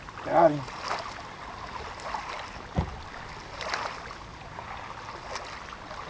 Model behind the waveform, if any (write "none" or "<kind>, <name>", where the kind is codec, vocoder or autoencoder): none